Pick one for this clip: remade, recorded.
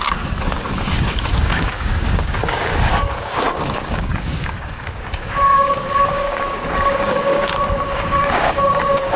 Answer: remade